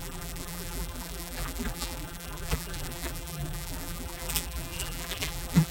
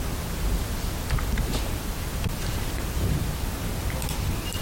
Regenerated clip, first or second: first